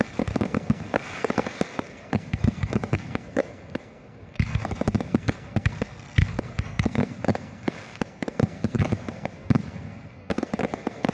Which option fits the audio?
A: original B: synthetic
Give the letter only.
B